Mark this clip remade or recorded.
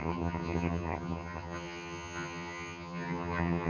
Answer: remade